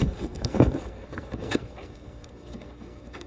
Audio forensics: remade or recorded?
remade